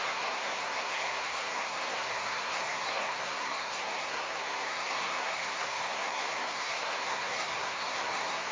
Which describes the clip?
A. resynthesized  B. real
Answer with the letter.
A